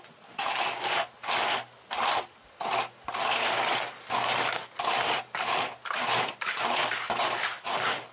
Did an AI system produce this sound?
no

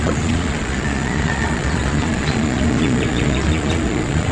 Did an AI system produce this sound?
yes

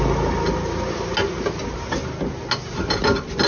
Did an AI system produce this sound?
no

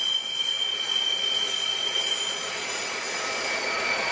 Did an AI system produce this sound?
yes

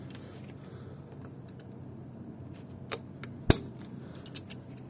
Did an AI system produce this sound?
no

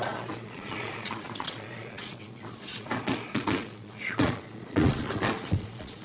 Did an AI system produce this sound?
yes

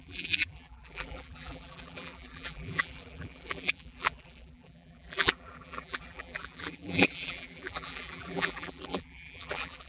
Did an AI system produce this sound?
yes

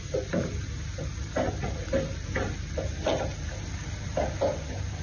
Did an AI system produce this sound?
no